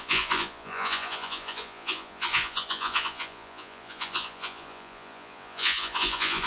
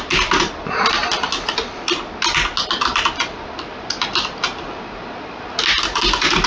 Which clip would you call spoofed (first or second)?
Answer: first